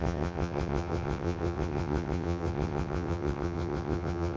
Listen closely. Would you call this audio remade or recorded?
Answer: remade